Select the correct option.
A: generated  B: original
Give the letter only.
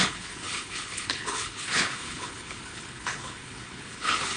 A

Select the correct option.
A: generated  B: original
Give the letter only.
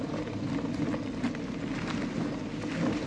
B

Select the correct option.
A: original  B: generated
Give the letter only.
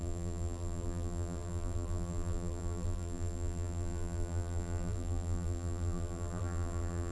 B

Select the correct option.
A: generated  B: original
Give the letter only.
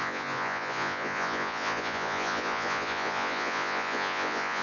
A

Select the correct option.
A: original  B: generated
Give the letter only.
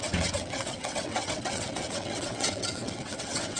B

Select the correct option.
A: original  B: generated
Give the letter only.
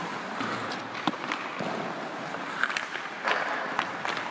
A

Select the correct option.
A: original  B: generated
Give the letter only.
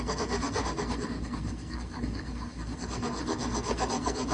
B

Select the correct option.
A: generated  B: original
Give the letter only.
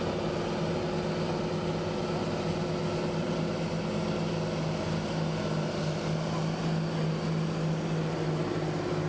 B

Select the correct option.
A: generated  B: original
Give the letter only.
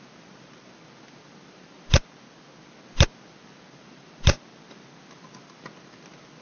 B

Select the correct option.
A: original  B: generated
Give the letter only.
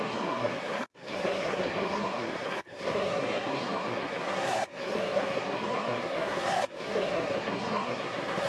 B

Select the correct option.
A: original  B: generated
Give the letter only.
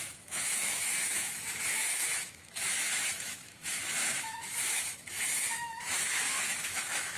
B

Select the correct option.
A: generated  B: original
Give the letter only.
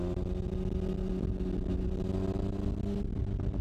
B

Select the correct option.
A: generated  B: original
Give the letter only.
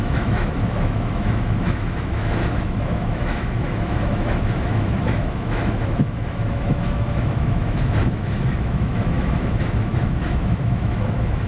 A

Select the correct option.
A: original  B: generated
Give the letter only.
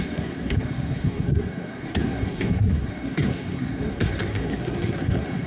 B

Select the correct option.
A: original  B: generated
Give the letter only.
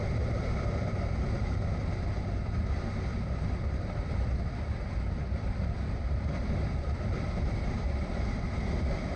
B